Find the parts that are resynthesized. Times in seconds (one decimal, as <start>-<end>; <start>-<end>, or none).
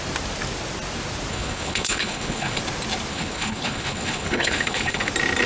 1.3-2.6; 3.1-5.1